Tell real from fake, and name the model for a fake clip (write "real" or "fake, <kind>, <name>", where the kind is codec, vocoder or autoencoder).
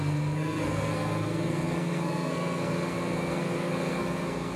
fake, codec, SNAC